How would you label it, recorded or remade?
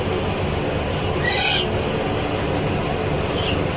recorded